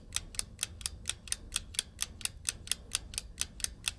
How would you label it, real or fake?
real